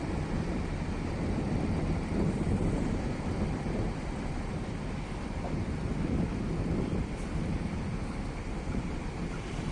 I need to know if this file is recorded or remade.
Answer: remade